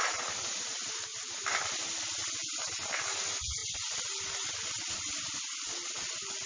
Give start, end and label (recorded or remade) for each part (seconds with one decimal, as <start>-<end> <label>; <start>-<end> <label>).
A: 0.0-1.1 recorded; 1.1-1.6 remade; 1.6-6.5 recorded